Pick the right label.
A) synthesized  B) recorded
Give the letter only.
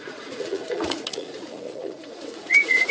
A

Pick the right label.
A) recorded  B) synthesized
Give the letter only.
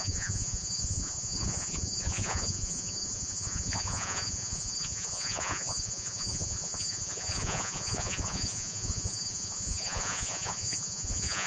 B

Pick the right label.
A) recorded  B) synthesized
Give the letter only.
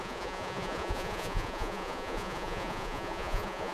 B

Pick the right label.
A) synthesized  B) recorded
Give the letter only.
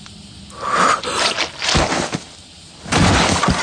B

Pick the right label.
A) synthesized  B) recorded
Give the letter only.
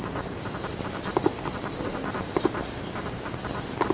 B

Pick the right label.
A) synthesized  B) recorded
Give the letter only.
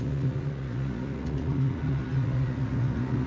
A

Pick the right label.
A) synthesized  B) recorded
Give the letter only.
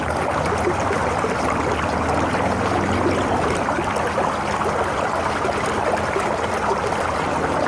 B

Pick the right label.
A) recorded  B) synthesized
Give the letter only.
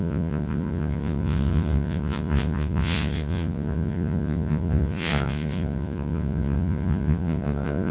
B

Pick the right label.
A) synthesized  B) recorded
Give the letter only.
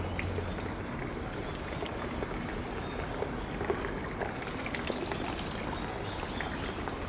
B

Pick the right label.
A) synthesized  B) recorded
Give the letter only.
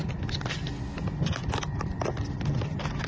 B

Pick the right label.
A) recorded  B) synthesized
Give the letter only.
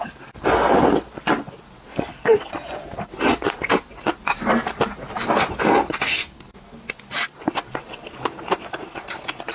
A